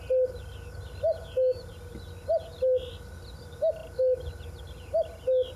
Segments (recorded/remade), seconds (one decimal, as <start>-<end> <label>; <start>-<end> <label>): 0.0-5.6 recorded